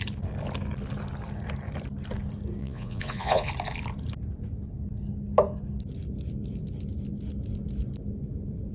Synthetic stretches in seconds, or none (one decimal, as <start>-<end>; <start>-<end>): 2.6-3.5